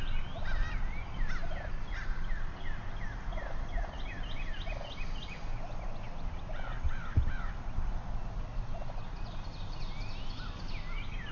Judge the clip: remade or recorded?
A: recorded